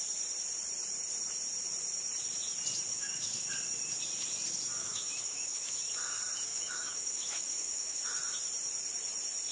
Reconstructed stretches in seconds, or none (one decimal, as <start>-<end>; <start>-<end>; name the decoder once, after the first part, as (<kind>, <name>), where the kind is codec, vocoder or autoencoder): 2.9-3.5 (autoencoder, DAC-VAE); 4.8-5.8; 6.5-8.0